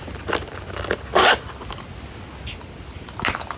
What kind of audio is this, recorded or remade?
recorded